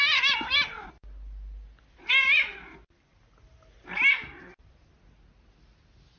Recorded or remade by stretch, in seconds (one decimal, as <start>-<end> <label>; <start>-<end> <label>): 0.0-6.2 recorded

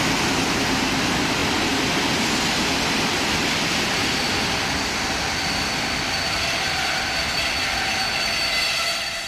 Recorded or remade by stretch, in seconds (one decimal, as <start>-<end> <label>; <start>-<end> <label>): 0.0-9.3 recorded

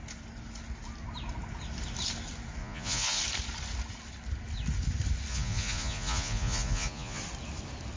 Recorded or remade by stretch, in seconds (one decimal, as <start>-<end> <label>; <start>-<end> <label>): 0.0-2.6 recorded; 2.6-3.2 remade; 3.2-5.3 recorded; 5.3-7.2 remade; 7.2-8.0 recorded

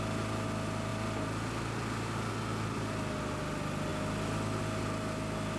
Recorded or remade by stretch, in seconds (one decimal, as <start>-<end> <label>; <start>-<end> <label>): 0.0-5.6 recorded

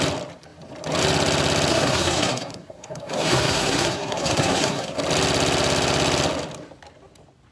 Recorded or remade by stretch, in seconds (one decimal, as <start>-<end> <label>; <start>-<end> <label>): 0.0-1.7 recorded; 1.7-5.0 remade; 5.0-7.5 recorded

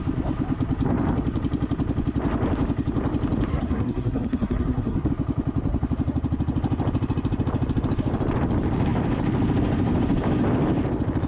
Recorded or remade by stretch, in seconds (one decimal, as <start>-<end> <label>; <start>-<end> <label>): 0.0-3.5 recorded; 3.5-5.1 remade; 5.1-11.3 recorded

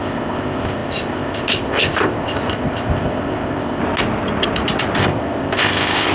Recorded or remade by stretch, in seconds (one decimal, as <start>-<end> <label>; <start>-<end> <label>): 0.0-3.8 remade; 3.8-5.0 recorded; 5.0-6.1 remade

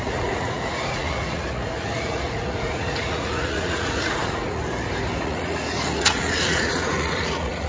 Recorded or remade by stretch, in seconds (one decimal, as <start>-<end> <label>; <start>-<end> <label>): 0.0-4.6 remade; 4.6-5.2 recorded; 5.2-7.7 remade